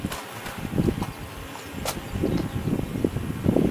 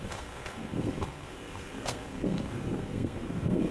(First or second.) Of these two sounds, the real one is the first